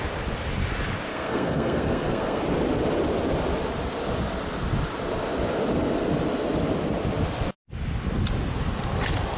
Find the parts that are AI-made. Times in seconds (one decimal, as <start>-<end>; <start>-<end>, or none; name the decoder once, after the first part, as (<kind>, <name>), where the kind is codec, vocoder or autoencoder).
1.1-2.4 (codec, SNAC)